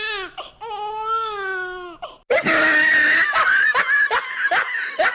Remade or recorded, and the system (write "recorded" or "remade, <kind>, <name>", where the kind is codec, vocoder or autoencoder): recorded